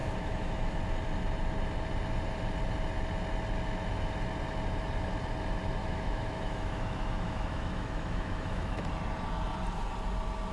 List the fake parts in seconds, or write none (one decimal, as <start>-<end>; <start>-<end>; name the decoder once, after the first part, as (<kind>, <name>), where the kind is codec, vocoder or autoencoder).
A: 0.0-0.8 (autoencoder, DAC-VAE); 5.8-8.9